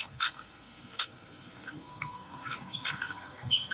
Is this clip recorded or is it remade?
remade